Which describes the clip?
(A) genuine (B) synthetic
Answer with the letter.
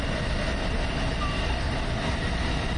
A